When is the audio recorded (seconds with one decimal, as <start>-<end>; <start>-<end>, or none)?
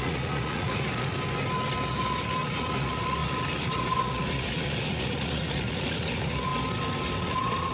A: 1.1-1.9; 6.5-7.2